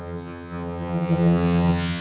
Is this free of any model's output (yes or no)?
no